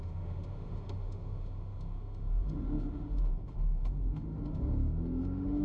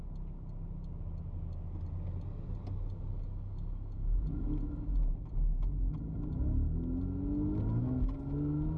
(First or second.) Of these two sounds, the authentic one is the second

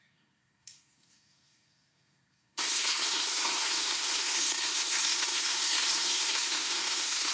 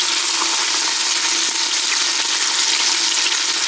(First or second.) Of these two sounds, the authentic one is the second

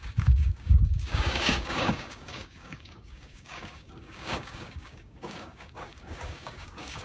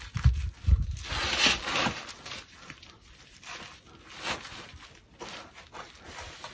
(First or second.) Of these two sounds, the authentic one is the second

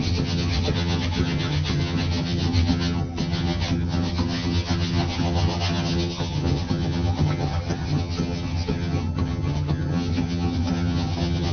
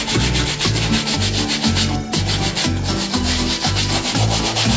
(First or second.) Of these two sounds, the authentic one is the second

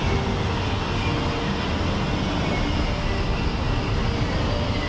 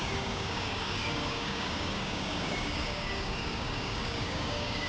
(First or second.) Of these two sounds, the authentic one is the first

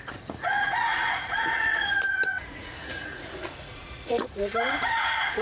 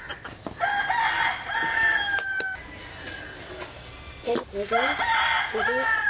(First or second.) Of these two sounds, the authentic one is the second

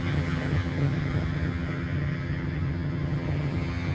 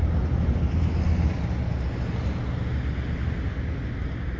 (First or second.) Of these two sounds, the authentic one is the second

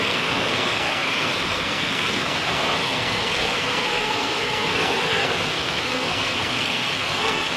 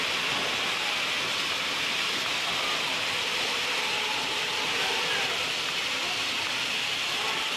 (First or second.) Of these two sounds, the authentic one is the second